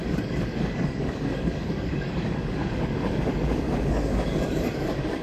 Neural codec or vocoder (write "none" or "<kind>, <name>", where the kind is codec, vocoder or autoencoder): codec, DAC